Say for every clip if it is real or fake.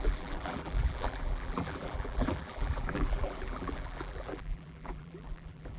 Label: fake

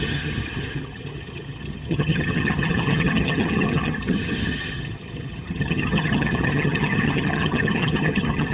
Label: fake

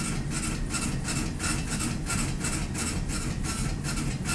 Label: real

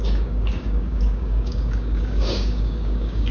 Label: fake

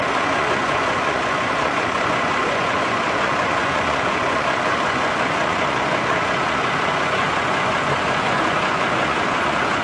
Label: fake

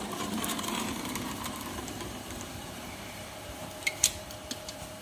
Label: fake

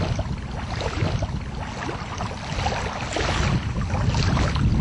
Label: real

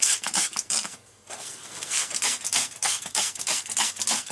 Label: fake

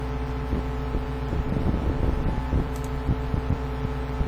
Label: fake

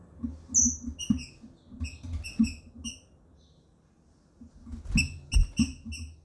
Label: real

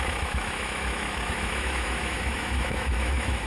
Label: fake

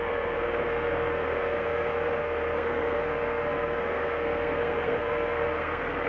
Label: fake